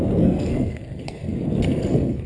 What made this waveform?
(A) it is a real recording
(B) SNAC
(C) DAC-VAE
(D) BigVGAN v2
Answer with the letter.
B